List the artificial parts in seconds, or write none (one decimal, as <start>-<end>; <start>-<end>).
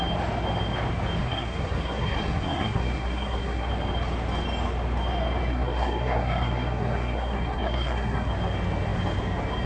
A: 1.2-3.7; 5.5-8.3